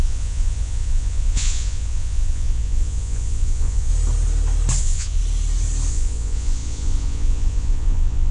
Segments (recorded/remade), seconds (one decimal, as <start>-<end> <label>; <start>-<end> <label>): 0.0-3.9 remade; 3.9-4.8 recorded; 4.8-5.2 remade; 5.2-5.9 recorded; 5.9-8.3 remade